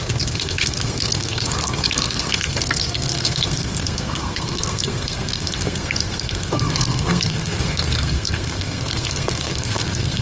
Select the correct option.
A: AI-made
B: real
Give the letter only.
A